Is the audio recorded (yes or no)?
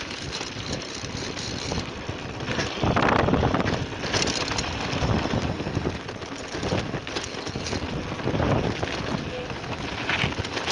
yes